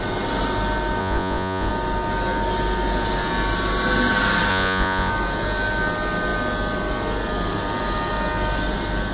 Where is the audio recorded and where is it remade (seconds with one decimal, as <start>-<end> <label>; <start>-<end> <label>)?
0.0-1.0 recorded; 1.0-1.7 remade; 1.7-4.5 recorded; 4.5-5.1 remade; 5.1-9.1 recorded